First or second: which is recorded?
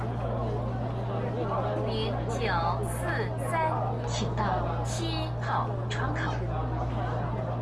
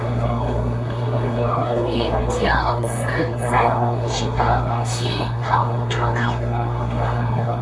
first